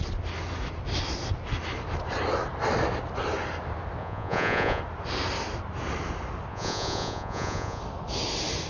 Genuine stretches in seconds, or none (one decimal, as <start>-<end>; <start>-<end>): 0.0-4.0; 4.8-6.5; 7.8-8.7